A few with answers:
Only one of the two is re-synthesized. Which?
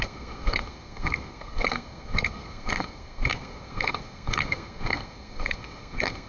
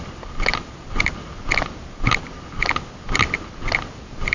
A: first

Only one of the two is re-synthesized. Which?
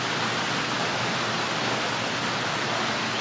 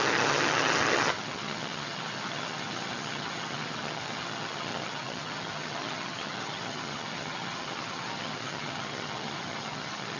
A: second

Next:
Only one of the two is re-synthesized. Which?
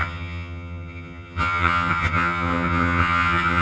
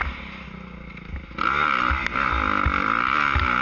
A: first